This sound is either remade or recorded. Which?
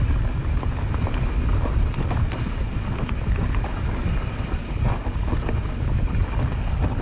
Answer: recorded